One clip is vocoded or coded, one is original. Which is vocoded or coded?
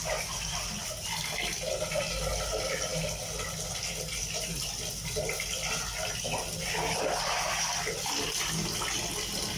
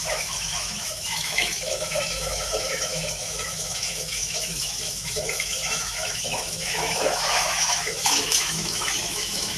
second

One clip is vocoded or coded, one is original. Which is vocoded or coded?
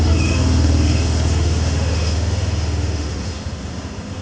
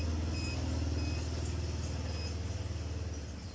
first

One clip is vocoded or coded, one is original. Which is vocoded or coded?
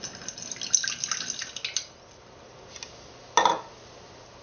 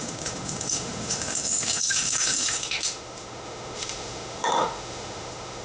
second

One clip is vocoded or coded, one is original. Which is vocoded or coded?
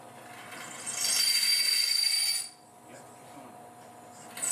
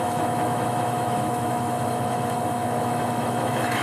second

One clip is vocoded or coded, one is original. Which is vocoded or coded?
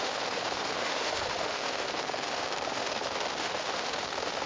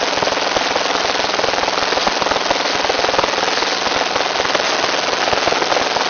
first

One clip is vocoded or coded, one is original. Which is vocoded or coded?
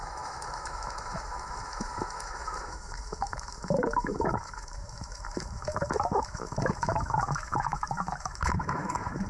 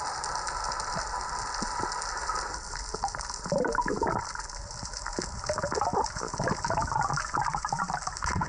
first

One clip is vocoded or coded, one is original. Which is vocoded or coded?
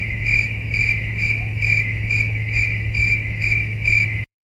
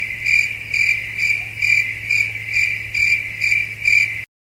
first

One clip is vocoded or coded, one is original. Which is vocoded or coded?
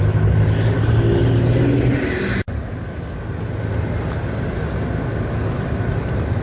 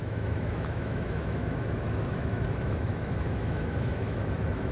second